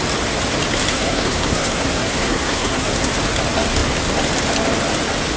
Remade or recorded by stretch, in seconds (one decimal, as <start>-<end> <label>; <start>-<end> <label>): 0.0-0.9 recorded; 0.9-3.1 remade; 3.1-5.4 recorded